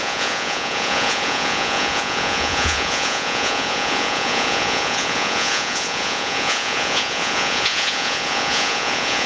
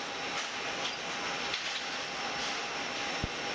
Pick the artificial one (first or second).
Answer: first